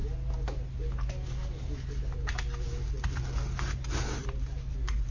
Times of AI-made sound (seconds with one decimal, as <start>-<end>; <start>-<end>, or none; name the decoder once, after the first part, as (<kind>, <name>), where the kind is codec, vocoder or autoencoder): 4.2-5.1 (vocoder, BigVGAN v2)